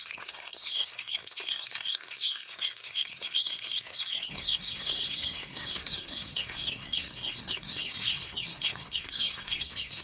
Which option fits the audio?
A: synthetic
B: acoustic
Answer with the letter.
A